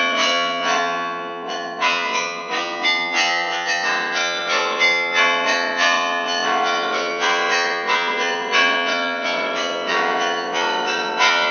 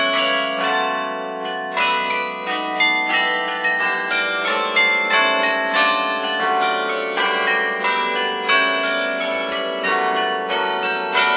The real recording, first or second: second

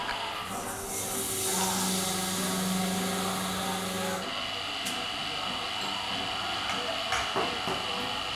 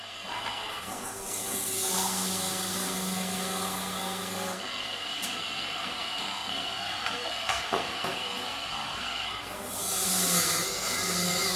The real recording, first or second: first